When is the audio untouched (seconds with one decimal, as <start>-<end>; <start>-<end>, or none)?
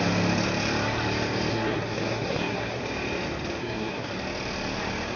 0.0-1.5; 2.8-3.6; 4.1-5.2